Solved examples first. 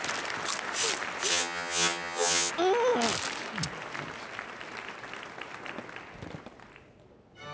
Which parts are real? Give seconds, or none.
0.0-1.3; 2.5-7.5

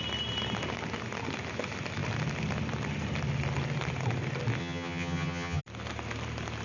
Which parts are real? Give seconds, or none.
0.0-4.6; 5.6-6.6